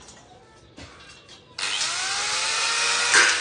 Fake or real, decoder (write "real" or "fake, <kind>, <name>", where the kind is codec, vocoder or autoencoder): real